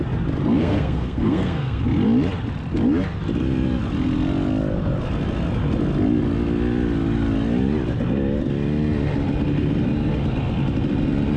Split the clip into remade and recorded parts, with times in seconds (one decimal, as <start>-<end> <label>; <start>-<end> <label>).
0.0-0.6 recorded; 0.6-1.8 remade; 1.8-11.4 recorded